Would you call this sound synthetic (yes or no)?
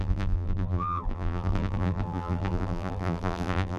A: yes